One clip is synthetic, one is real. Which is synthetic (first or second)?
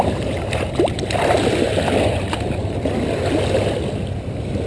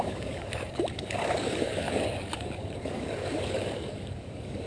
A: second